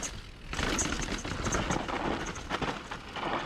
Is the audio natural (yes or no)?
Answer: yes